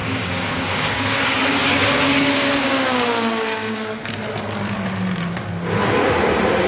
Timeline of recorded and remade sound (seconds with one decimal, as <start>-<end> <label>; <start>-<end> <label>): 0.0-4.0 remade; 4.0-6.7 recorded